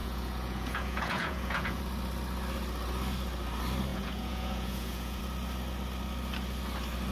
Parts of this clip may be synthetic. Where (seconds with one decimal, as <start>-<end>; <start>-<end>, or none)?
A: 0.0-1.8; 3.9-5.2

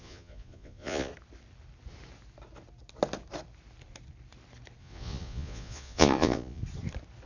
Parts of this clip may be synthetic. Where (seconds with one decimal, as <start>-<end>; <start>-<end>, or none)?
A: 0.0-1.1; 4.8-6.6

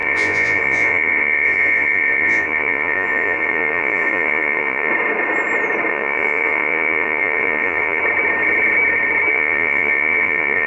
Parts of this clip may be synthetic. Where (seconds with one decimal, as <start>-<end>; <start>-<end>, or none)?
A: 0.0-4.9; 5.9-8.0; 9.3-10.7

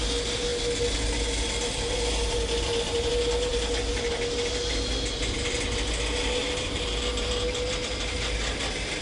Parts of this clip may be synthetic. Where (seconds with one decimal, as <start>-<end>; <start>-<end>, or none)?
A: none

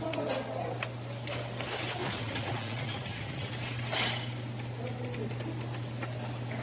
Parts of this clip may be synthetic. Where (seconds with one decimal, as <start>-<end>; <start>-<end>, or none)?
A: 2.0-3.5